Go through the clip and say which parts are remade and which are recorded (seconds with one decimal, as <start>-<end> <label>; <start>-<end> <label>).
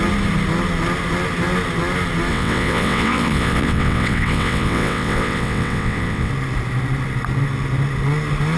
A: 0.0-2.3 recorded; 2.3-6.3 remade; 6.3-8.6 recorded